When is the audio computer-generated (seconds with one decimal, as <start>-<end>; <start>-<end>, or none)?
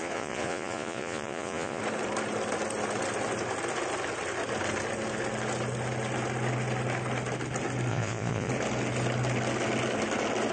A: 0.0-1.8; 7.9-8.5